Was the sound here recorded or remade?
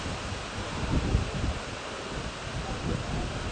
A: recorded